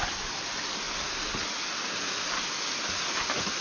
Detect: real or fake real